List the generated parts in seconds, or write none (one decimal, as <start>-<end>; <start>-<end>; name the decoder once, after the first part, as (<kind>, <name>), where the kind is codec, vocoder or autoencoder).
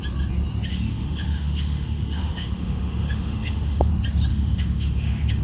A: 0.7-3.9 (autoencoder, DAC-VAE); 4.3-5.4